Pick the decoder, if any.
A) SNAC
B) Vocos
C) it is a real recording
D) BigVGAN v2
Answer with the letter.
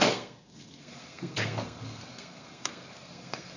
A